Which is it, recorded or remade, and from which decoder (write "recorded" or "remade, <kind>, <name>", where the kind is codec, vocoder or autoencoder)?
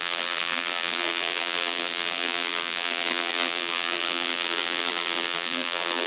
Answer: remade, vocoder, BigVGAN v2